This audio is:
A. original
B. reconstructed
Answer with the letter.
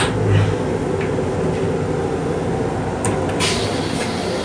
A